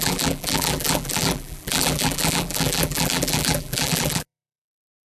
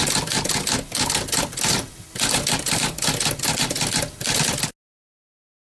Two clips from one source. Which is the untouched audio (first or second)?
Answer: second